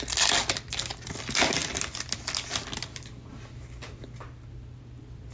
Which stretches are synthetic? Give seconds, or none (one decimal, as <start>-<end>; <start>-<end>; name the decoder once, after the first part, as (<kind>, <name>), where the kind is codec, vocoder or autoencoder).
none